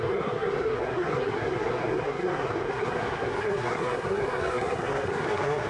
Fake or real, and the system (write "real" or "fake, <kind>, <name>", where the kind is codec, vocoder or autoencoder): fake, codec, SNAC